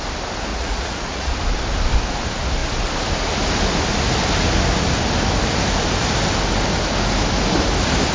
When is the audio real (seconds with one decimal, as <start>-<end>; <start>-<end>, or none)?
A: 0.0-0.5; 1.3-8.1